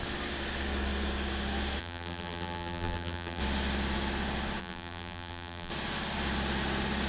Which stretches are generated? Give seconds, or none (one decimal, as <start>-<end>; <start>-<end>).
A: 1.8-3.4; 4.6-5.7